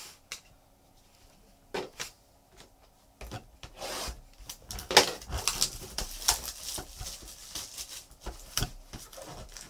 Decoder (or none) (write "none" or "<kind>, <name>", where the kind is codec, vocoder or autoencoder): none